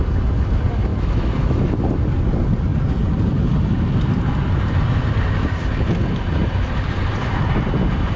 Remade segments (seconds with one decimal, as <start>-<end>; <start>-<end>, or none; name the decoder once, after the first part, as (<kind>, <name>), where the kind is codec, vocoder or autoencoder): 0.9-1.8 (autoencoder, DAC-VAE)

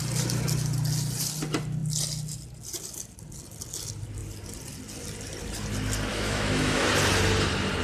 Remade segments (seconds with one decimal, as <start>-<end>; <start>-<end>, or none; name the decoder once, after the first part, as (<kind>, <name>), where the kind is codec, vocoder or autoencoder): 6.1-6.9 (autoencoder, DAC-VAE)

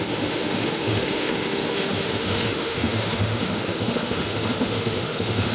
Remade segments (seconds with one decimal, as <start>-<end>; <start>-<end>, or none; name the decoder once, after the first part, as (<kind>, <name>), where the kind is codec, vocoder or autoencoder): 0.0-5.5 (autoencoder, DAC-VAE)